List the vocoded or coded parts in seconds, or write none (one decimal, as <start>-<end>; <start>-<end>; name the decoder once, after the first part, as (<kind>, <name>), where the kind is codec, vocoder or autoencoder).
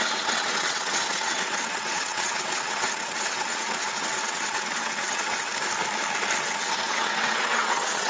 0.0-5.5 (vocoder, WaveNeXt); 6.4-8.1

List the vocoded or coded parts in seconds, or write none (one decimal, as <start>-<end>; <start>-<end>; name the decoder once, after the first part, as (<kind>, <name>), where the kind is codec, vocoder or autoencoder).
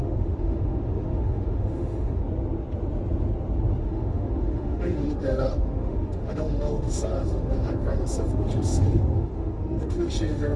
0.0-2.2 (autoencoder, DAC-VAE); 3.8-10.6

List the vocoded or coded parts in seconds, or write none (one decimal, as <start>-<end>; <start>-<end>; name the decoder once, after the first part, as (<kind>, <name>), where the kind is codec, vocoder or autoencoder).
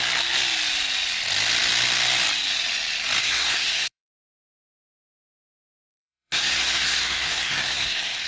3.2-8.3 (codec, SNAC)